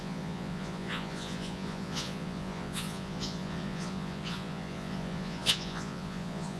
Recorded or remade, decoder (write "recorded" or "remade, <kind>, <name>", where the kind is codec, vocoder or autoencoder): remade, vocoder, Vocos